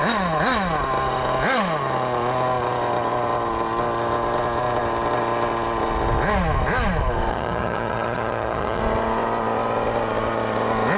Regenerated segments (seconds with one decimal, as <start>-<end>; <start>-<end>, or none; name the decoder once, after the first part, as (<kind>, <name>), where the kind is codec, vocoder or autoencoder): 7.3-8.8 (vocoder, HiFi-GAN)